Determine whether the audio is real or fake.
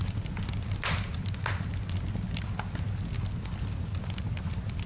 real